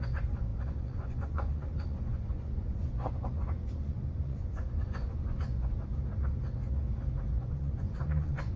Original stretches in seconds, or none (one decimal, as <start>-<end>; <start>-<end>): 5.9-7.3